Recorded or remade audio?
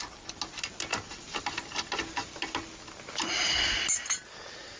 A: recorded